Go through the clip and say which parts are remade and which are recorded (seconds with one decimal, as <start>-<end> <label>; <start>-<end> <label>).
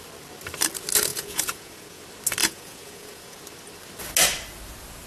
0.0-1.1 recorded; 1.1-2.0 remade; 2.0-2.4 recorded; 2.4-3.4 remade; 3.4-5.1 recorded